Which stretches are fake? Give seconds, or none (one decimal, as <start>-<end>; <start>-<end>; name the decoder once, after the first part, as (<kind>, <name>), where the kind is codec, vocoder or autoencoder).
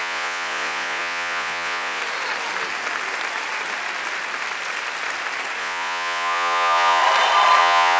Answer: 0.0-2.0 (vocoder, Vocos); 5.6-7.0; 7.6-8.0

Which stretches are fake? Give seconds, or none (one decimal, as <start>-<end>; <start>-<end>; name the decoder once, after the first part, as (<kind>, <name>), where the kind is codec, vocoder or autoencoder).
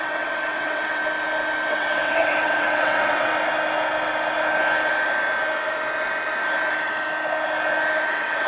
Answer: 0.0-1.0 (vocoder, WaveNeXt); 1.7-3.3; 8.1-8.5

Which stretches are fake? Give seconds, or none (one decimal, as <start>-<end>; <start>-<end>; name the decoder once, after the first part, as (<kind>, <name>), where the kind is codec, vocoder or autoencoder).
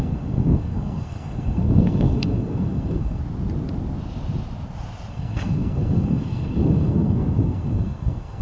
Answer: 0.0-3.2 (codec, SNAC); 5.1-8.4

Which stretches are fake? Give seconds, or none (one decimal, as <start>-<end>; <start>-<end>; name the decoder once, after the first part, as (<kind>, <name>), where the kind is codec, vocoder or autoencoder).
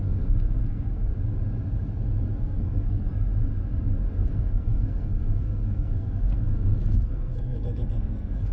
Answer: 0.0-1.1 (codec, SNAC); 2.4-3.3; 4.1-8.5